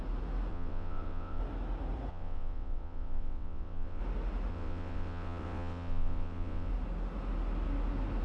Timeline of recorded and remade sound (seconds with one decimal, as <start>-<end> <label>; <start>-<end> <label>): 0.0-0.5 recorded; 0.5-1.4 remade; 1.4-2.1 recorded; 2.1-4.0 remade; 4.0-4.5 recorded; 4.5-6.7 remade; 6.7-8.2 recorded